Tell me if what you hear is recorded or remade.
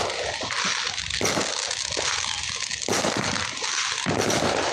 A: recorded